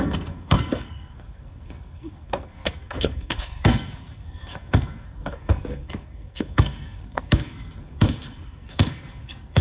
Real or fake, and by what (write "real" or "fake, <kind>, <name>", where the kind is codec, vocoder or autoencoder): fake, codec, SNAC